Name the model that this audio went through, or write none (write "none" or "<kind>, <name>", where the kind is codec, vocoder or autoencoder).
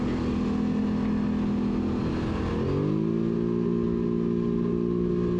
none